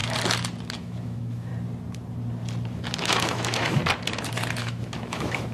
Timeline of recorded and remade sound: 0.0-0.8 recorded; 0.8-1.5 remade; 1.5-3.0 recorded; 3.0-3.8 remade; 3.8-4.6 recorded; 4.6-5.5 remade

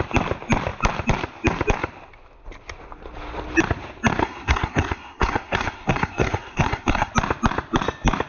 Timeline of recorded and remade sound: 0.0-4.2 recorded; 4.2-7.1 remade; 7.1-8.3 recorded